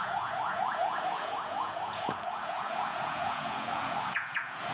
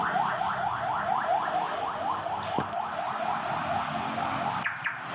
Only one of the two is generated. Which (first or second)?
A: first